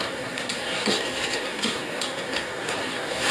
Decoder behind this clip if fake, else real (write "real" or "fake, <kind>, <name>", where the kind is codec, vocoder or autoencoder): fake, codec, SNAC